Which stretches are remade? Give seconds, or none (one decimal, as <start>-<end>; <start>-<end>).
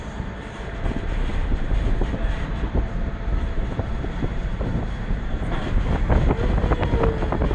1.5-5.9